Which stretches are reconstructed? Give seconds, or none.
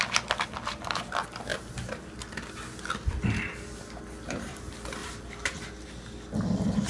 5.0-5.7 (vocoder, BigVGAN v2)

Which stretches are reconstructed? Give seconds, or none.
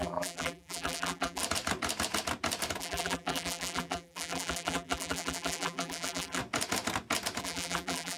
0.0-1.4 (vocoder, BigVGAN v2); 2.8-6.4; 7.4-8.2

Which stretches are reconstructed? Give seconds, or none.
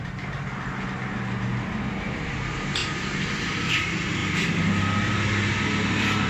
2.8-3.4 (vocoder, BigVGAN v2)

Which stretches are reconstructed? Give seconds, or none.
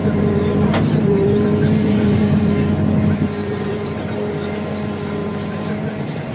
0.0-2.5 (vocoder, BigVGAN v2); 3.4-4.3; 5.2-6.3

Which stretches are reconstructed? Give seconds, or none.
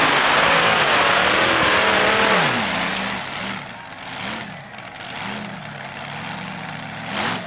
none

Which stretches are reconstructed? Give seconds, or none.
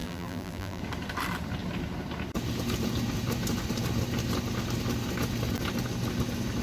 0.0-0.8 (vocoder, BigVGAN v2)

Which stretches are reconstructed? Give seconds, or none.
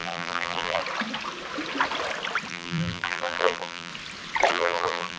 0.0-0.8 (vocoder, BigVGAN v2); 2.5-3.9; 4.5-5.2